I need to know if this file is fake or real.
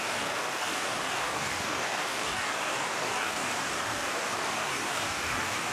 fake